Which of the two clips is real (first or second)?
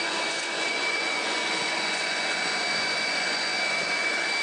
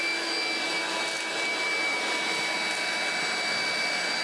second